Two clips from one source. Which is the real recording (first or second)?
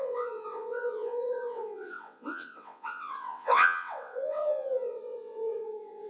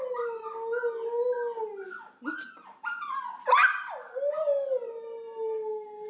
second